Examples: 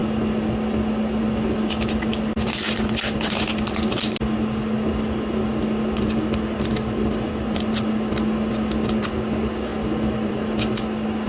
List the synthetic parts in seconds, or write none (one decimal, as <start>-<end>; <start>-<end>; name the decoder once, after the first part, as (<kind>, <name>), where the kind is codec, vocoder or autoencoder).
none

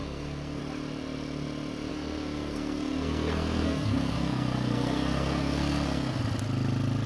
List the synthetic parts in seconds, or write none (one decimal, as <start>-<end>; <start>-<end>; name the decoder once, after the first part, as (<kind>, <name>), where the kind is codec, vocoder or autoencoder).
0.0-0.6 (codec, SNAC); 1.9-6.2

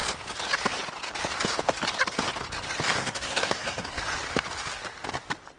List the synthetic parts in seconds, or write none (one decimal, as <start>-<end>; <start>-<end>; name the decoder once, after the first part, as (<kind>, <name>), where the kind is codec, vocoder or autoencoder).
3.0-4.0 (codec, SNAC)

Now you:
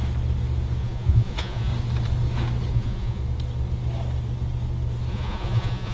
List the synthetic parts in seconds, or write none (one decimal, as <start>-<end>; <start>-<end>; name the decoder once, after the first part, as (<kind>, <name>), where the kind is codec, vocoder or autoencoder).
0.8-1.7 (vocoder, Vocos); 2.7-3.2; 5.1-5.9

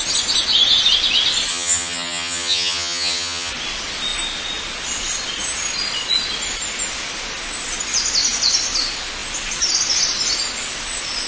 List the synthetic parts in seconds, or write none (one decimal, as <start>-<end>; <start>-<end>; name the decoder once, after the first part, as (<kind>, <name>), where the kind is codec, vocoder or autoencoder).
1.5-3.5 (vocoder, HiFi-GAN)

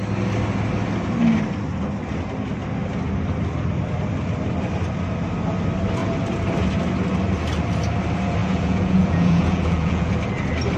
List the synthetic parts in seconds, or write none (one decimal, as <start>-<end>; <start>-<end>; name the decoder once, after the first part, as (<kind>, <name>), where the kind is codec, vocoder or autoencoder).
8.4-10.1 (vocoder, Vocos)

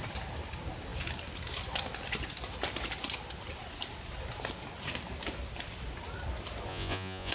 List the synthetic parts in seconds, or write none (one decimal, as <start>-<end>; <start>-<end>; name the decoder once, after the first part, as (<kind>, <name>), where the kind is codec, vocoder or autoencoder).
6.7-7.3 (vocoder, Vocos)

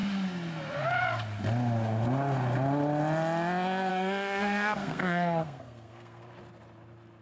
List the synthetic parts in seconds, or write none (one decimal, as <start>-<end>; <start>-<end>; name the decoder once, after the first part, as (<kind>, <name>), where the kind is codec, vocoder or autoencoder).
3.9-6.2 (codec, SNAC)